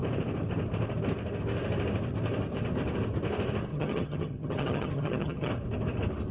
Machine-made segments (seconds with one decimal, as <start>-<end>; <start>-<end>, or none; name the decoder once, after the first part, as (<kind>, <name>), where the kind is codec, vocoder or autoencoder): 3.7-5.5 (vocoder, HiFi-GAN)